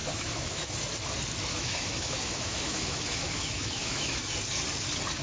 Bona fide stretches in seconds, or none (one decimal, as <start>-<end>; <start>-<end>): 0.7-1.5; 4.2-5.2